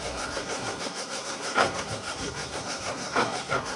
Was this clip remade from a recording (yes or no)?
yes